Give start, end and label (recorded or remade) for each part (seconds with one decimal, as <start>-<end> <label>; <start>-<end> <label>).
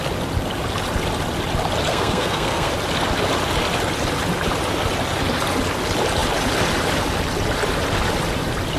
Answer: 0.0-1.9 recorded; 1.9-2.7 remade; 2.7-8.8 recorded